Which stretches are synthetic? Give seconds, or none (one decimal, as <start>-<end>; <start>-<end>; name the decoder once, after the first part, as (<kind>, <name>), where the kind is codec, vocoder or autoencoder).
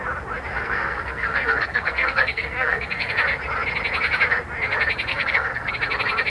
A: 0.5-3.1 (codec, SNAC); 5.1-5.7